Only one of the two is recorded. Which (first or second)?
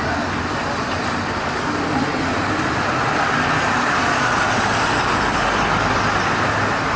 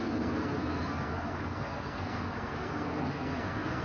first